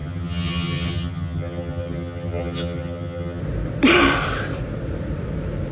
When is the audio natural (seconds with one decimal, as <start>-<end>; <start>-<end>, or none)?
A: 3.4-5.7